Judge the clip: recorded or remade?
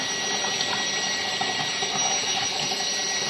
recorded